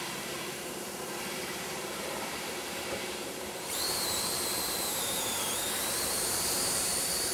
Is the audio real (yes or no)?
no